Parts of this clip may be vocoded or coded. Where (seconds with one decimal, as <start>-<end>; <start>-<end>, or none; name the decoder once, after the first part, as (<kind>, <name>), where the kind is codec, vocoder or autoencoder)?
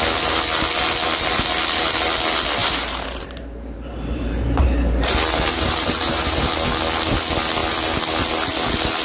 2.6-6.5 (vocoder, BigVGAN v2)